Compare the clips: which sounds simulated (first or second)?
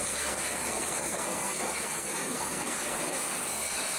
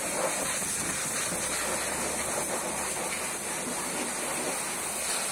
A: first